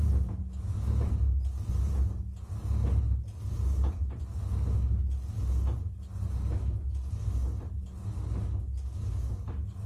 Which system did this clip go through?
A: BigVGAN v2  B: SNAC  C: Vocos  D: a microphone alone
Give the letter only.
D